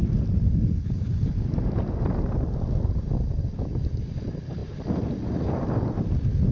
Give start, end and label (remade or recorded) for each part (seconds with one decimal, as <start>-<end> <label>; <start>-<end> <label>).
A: 0.0-6.5 recorded